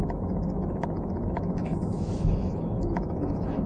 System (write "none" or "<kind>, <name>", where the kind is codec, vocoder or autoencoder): autoencoder, DAC-VAE